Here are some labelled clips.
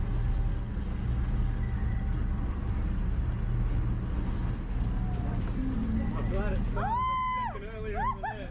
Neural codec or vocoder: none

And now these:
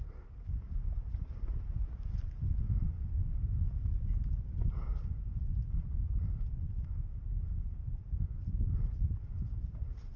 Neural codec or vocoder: none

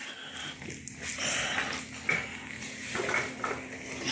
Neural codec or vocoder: none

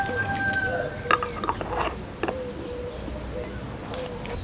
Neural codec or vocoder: none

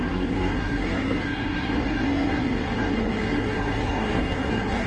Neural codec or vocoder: codec, SNAC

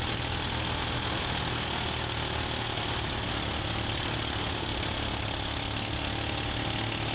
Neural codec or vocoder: none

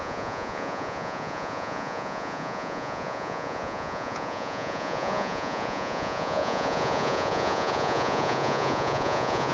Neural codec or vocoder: vocoder, Vocos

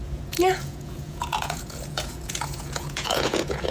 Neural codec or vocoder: vocoder, Vocos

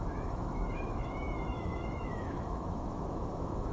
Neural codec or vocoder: autoencoder, DAC-VAE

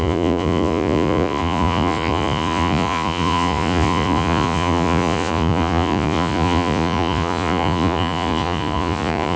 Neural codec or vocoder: vocoder, Vocos